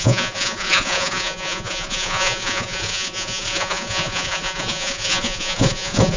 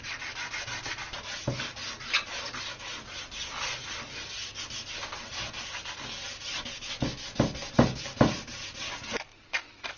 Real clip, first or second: second